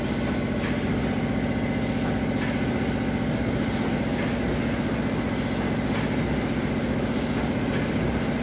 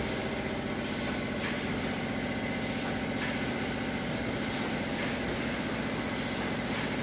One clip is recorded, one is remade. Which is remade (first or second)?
second